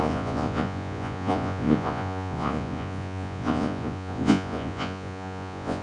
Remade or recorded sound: remade